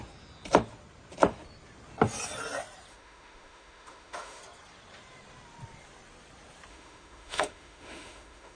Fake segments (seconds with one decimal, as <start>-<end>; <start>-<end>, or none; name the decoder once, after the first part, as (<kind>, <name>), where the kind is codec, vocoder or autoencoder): 2.9-4.4 (autoencoder, DAC-VAE); 6.7-8.6